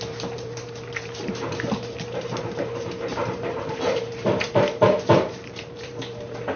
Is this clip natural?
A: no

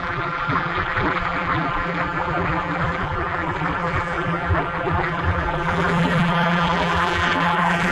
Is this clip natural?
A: no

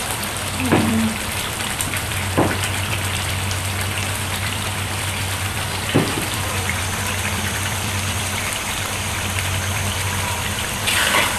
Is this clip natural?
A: no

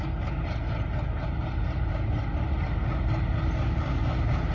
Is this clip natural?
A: yes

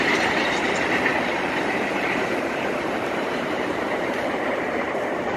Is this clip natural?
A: no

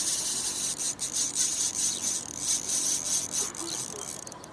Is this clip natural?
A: no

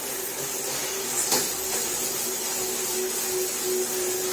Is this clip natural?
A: yes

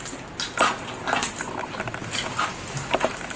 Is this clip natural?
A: yes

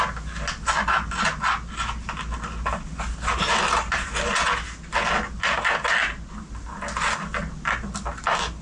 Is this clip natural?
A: yes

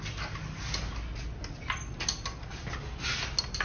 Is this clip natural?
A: yes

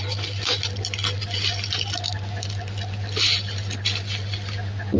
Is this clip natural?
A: yes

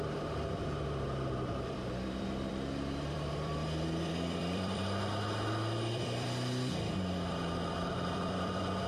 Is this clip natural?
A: no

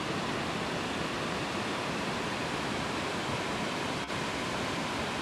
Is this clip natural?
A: no